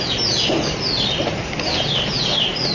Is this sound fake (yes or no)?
no